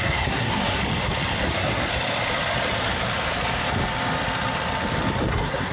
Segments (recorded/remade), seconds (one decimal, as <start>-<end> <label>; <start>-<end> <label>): 0.0-0.8 remade; 0.8-1.5 recorded; 1.5-1.9 remade; 1.9-5.3 recorded; 5.3-5.7 remade